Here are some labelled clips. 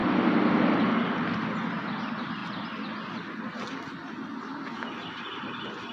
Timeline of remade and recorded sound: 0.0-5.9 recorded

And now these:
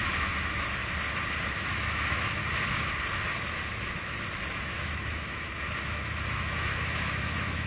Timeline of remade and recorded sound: 0.0-0.8 remade; 0.8-1.6 recorded; 1.6-2.4 remade; 2.4-4.5 recorded; 4.5-7.7 remade

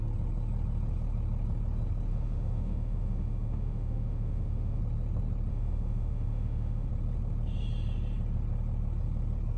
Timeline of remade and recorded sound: 0.0-2.1 recorded; 2.1-4.8 remade; 4.8-5.5 recorded; 5.5-6.9 remade; 6.9-9.6 recorded

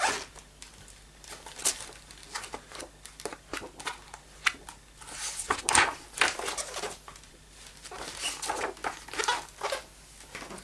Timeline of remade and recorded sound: 0.0-10.6 recorded

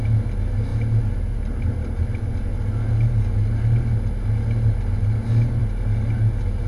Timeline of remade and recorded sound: 0.0-6.7 recorded